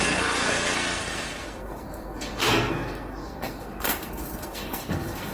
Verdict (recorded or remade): remade